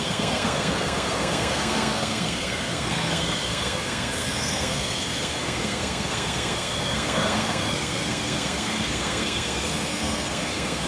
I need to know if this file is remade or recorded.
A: remade